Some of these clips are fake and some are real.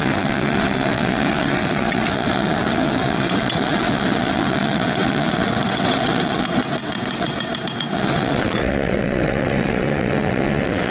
fake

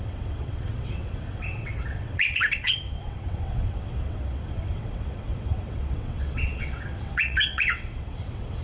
fake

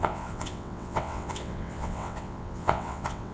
fake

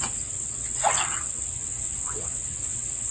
fake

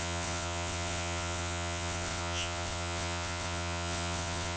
fake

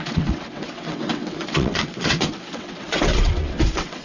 fake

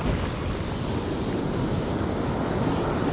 real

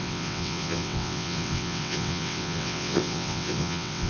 fake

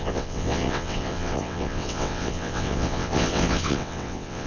fake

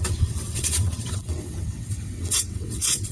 fake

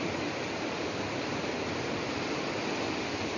real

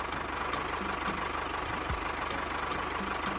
real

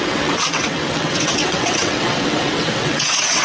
fake